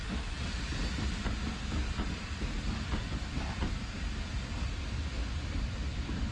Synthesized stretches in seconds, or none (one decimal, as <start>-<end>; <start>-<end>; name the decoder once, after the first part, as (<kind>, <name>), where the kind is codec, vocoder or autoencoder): none